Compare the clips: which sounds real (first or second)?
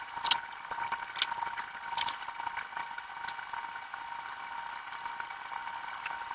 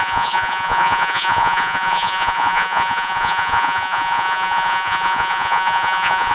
first